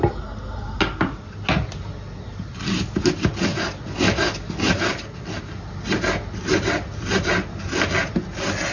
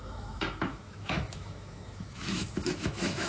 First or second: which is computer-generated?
second